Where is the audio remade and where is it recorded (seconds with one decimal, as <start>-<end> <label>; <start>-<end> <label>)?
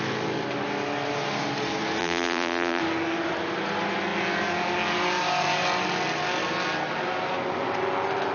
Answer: 0.0-2.0 recorded; 2.0-2.8 remade; 2.8-8.3 recorded